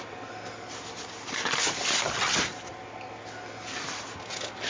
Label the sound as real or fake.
real